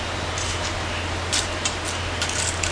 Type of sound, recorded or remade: recorded